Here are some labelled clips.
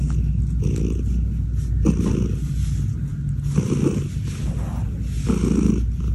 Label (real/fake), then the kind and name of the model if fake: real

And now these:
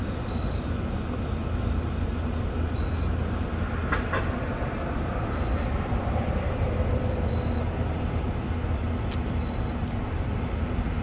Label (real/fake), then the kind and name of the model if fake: real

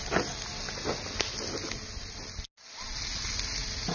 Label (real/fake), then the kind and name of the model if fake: real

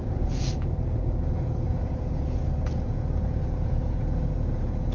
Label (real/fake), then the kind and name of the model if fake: fake, vocoder, Vocos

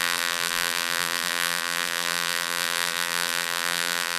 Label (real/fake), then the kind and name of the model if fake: fake, vocoder, BigVGAN v2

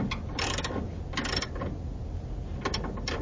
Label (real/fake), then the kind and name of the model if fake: real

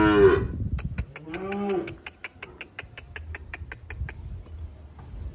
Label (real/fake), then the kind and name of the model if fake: real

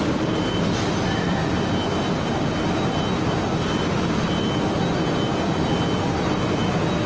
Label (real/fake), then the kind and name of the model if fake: real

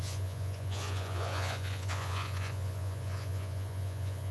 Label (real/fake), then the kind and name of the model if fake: fake, vocoder, Vocos